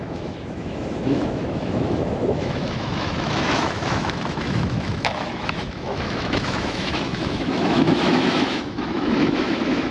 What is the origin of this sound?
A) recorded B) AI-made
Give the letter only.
B